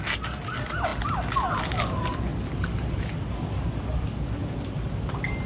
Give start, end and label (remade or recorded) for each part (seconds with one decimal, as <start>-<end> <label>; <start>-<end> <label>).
0.0-5.5 recorded